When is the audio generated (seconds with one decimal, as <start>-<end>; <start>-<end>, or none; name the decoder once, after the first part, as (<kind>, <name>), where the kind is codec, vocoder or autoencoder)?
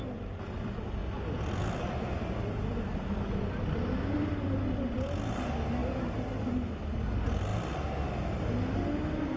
none